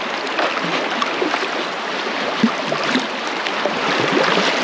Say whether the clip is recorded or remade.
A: recorded